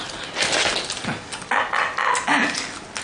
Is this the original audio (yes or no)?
yes